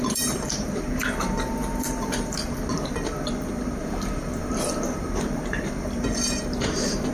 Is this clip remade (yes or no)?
yes